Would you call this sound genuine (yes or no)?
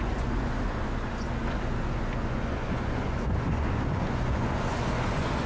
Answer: no